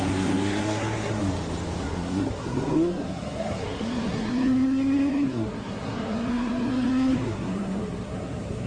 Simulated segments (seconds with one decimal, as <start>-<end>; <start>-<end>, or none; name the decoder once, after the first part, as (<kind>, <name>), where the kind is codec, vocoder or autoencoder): 0.0-1.2 (codec, SNAC); 1.8-8.7